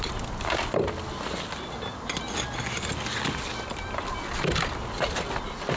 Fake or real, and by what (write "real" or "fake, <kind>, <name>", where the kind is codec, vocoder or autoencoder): real